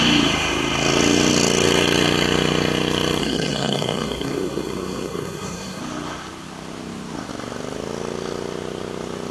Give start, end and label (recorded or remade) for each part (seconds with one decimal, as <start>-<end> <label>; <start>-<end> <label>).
0.0-3.2 recorded; 3.2-5.8 remade; 5.8-9.3 recorded